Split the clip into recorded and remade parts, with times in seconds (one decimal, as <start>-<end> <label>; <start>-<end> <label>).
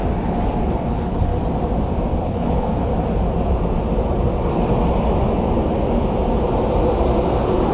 0.0-0.9 recorded; 0.9-1.3 remade; 1.3-2.2 recorded; 2.2-2.9 remade; 2.9-7.7 recorded